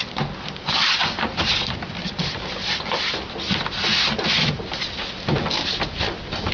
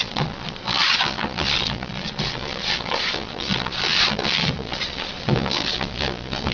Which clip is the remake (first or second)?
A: second